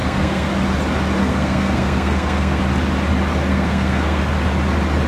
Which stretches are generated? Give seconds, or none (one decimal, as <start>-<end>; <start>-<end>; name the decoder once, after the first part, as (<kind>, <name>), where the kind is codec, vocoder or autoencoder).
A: 0.0-0.5 (codec, SNAC); 1.2-2.6; 3.5-4.2